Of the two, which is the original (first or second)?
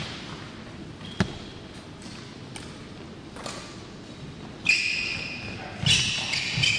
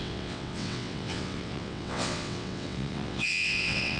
first